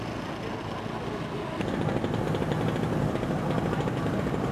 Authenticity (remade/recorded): recorded